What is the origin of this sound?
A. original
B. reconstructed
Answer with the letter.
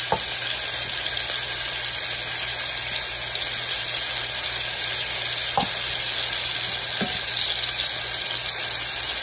A